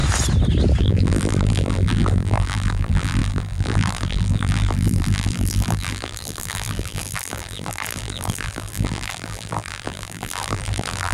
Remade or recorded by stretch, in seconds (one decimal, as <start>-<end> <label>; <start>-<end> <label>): 0.0-0.8 recorded; 0.8-11.1 remade